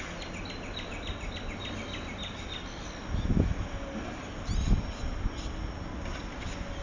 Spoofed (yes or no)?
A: no